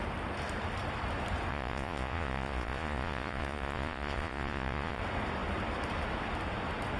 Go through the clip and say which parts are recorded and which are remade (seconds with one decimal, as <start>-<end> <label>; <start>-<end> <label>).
0.0-1.5 recorded; 1.5-5.0 remade; 5.0-7.0 recorded